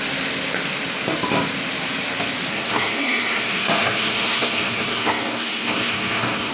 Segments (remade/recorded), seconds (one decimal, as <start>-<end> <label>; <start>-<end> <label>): 0.0-2.5 recorded; 2.5-6.5 remade